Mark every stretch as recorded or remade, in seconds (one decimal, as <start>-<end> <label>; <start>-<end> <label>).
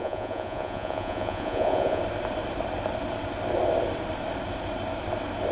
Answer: 0.0-2.0 remade; 2.0-5.5 recorded